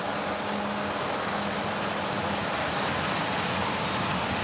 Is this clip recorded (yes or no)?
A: yes